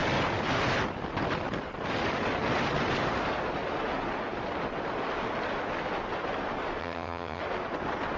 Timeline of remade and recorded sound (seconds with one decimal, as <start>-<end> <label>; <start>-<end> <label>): 0.0-6.8 recorded; 6.8-7.4 remade; 7.4-8.2 recorded

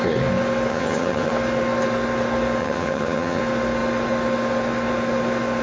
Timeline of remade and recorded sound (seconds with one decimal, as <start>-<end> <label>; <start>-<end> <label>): 0.0-0.7 recorded; 0.7-1.3 remade; 1.3-2.6 recorded; 2.6-3.4 remade; 3.4-5.6 recorded